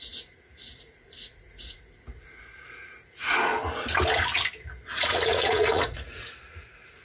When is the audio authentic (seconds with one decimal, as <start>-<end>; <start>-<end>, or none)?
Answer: 3.5-4.9